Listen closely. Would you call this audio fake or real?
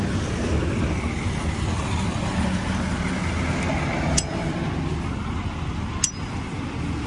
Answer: real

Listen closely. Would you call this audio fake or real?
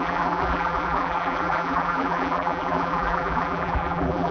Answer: fake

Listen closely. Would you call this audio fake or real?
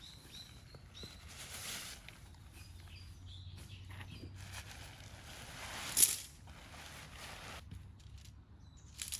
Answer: real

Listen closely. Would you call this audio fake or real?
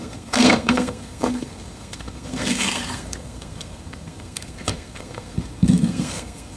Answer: fake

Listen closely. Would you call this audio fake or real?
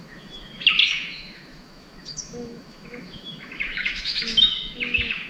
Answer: fake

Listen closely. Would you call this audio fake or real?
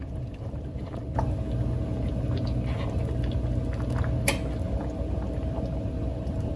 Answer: real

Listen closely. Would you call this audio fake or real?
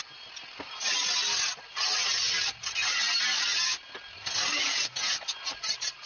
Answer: real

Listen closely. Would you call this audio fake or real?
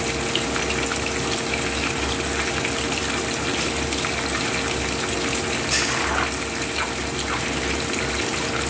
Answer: real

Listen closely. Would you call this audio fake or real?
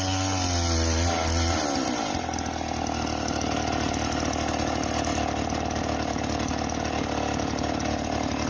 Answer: real